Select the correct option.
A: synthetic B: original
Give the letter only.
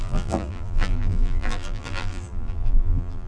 A